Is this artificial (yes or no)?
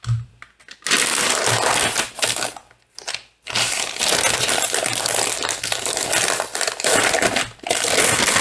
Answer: no